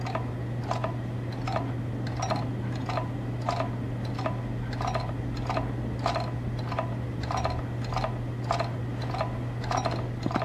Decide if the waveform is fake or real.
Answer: real